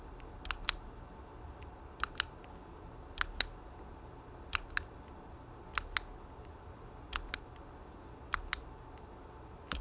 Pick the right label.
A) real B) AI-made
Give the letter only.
A